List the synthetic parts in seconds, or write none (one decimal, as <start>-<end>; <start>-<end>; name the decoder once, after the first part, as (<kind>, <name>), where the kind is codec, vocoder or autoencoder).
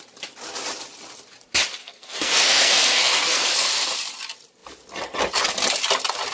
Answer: 1.8-3.9 (codec, SNAC)